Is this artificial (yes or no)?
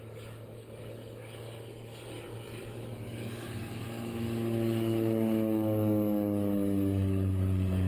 yes